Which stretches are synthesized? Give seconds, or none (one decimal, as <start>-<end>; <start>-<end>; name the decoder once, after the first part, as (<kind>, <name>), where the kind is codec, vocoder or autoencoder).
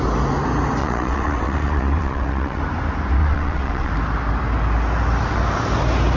0.8-2.6 (vocoder, WaveNeXt); 3.2-3.9